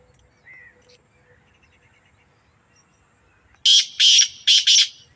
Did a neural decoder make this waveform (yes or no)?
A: no